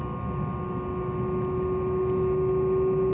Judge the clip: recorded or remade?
recorded